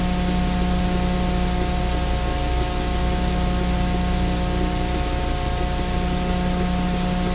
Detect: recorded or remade recorded